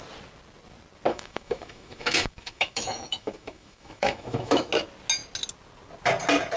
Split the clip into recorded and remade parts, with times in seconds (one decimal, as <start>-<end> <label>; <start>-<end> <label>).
0.0-1.1 recorded; 1.1-4.7 remade; 4.7-6.6 recorded